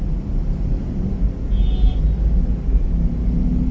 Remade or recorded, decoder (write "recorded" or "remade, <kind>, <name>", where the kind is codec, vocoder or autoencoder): recorded